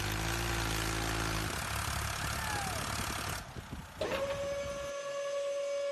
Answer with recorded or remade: recorded